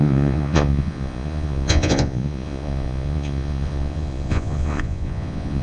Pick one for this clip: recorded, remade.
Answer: remade